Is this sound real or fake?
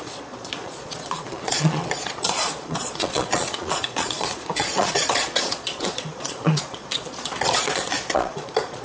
fake